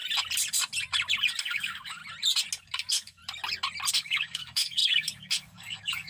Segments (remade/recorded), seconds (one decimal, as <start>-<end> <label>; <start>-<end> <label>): 0.0-1.4 recorded; 1.4-2.0 remade; 2.0-2.6 recorded; 2.6-3.2 remade; 3.2-3.9 recorded; 3.9-6.1 remade